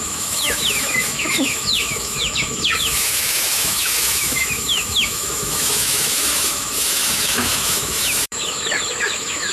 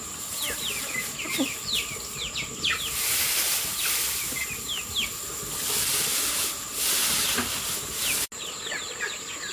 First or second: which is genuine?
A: second